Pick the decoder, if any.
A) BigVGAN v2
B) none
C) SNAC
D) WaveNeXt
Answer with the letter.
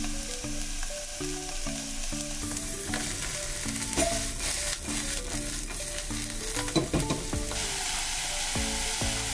B